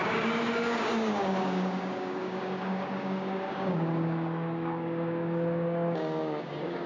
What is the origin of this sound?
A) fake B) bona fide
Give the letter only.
A